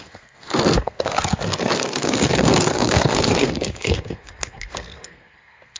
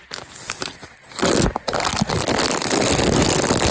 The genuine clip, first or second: second